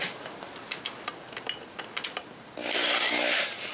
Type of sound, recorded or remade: remade